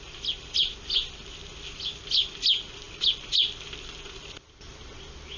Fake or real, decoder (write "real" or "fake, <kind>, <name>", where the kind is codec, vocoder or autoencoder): real